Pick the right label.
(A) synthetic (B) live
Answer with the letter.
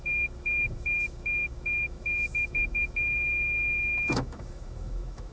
A